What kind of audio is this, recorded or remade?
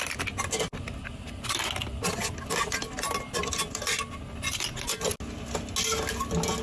recorded